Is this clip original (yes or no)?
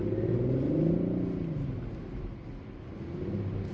yes